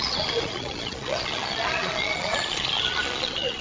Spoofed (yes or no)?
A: yes